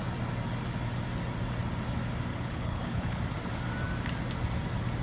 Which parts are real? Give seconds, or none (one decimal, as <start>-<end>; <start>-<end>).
0.0-2.3; 3.2-5.0